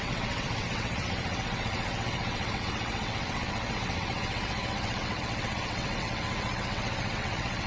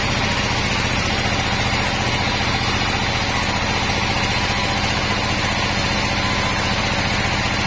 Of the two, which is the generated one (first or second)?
first